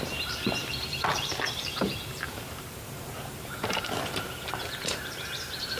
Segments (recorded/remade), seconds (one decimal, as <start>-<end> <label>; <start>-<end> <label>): 0.0-5.8 remade